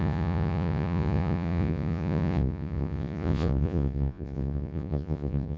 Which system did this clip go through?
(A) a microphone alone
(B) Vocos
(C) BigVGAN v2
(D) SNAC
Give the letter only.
B